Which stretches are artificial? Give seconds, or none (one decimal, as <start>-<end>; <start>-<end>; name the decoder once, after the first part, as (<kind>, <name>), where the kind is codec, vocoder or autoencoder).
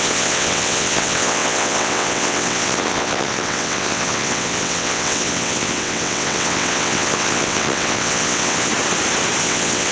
0.0-8.7 (vocoder, WaveNeXt); 9.4-9.9